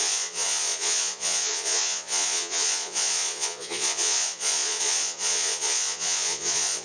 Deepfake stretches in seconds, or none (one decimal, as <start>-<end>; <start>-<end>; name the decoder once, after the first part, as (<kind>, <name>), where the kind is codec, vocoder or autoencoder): 0.0-6.8 (vocoder, Vocos)